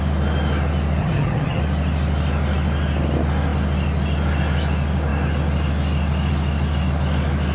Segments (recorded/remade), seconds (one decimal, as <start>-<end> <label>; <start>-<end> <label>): 0.0-1.0 recorded; 1.0-1.6 remade; 1.6-7.5 recorded